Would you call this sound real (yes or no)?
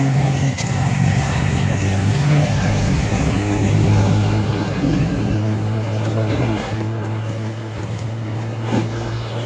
no